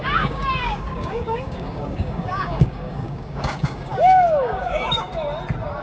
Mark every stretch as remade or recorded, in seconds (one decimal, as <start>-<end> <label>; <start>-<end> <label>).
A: 0.0-5.1 remade; 5.1-5.8 recorded